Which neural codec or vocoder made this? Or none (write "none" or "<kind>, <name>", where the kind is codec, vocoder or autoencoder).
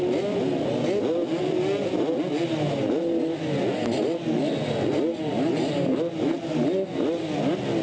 none